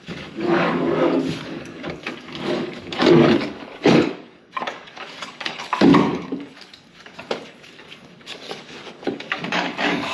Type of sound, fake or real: fake